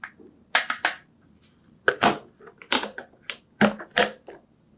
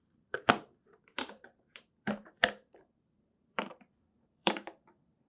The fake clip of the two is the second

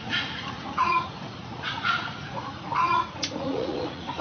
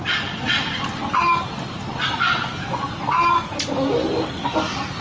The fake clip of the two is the first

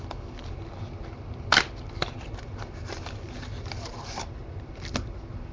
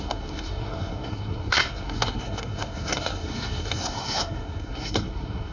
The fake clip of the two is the second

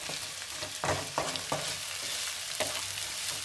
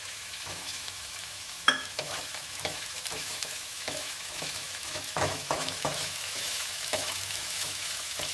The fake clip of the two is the second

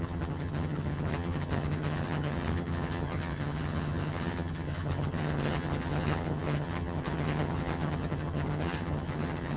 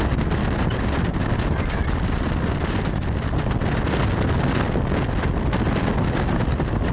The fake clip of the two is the first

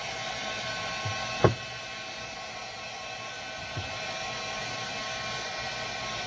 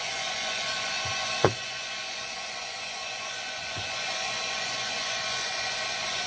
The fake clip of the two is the second